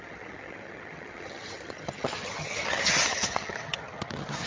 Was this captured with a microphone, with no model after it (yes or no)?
no